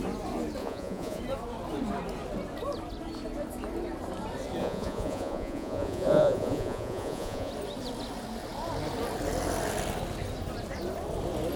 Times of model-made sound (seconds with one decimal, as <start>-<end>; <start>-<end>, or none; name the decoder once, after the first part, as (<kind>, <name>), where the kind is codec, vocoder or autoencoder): 0.6-1.2 (vocoder, Vocos); 4.6-7.5